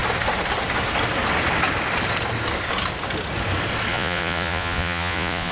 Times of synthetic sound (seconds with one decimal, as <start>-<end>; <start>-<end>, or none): 3.9-5.5